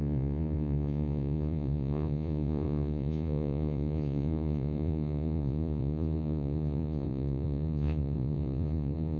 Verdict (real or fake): fake